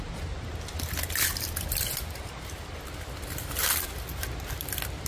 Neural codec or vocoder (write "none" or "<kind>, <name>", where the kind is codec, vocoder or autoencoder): none